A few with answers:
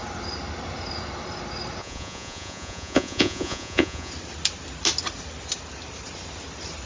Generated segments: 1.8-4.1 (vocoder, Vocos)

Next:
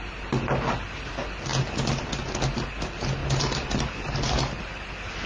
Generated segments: none

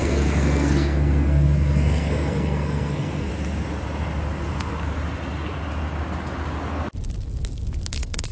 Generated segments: 0.0-3.3 (codec, SNAC); 7.9-8.3

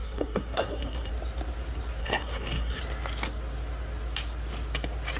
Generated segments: 0.0-1.1 (codec, SNAC); 2.0-2.8